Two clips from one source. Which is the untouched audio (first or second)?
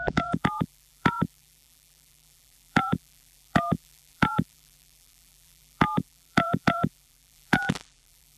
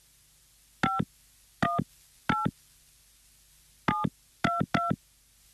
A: second